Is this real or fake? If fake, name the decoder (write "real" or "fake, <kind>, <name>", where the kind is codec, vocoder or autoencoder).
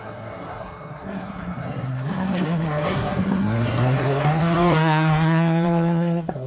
fake, codec, SNAC